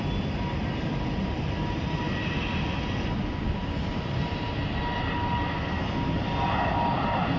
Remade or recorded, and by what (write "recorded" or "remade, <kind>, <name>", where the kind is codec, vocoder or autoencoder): recorded